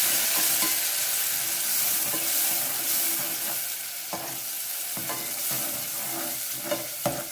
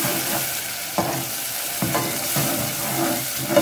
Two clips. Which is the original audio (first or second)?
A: first